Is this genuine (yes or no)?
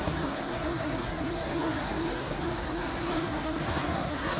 no